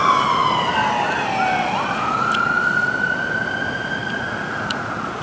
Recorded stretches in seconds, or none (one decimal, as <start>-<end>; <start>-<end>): 0.0-4.0